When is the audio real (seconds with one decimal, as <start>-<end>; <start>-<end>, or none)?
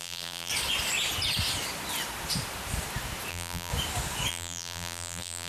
0.5-3.3; 3.7-4.3